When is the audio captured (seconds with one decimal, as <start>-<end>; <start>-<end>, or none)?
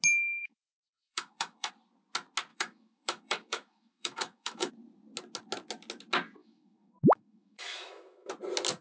0.0-0.4; 1.7-2.5; 4.7-6.4; 8.3-8.8